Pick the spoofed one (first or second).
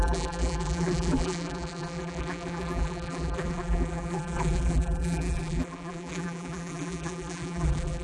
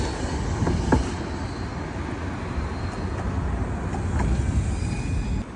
first